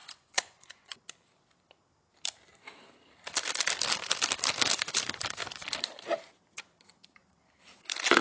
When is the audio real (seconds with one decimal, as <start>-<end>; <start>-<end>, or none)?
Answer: 1.0-8.2